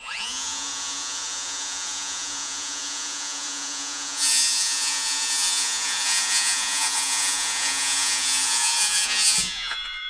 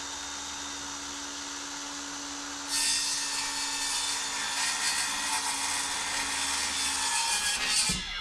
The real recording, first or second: second